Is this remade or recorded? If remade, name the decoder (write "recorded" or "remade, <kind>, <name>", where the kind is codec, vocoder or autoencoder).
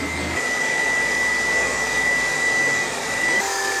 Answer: remade, codec, DAC